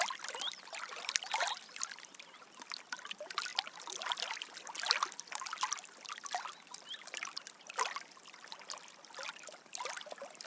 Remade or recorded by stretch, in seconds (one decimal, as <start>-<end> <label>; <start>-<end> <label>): 0.0-10.5 recorded